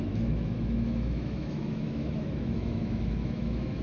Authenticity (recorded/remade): remade